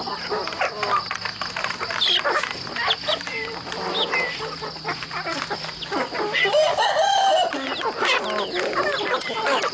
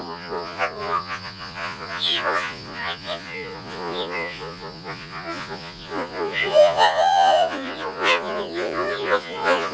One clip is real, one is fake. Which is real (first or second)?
first